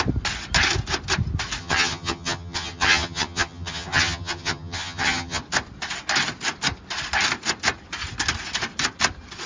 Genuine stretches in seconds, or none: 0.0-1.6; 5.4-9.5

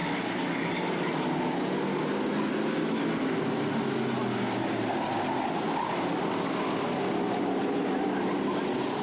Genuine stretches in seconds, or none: 0.0-9.0

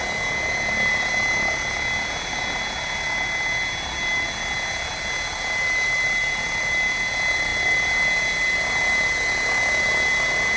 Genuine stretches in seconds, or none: 0.0-10.6

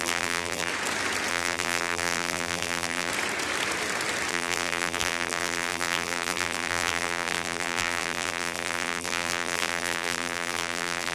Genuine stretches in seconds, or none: 0.7-1.3; 3.1-4.3

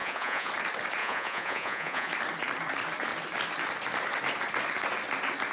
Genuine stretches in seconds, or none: 0.5-1.0; 2.1-5.5

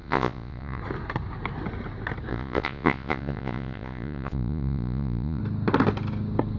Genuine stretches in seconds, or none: 0.8-2.3; 5.4-6.6

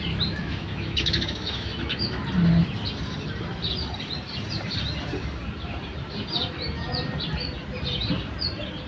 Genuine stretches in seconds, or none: 0.0-0.4; 2.2-8.9